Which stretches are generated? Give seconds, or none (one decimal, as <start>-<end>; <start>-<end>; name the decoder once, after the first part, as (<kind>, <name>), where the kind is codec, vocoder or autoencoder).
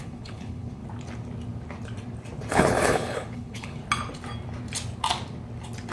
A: 0.0-0.8 (codec, HILCodec); 2.5-3.8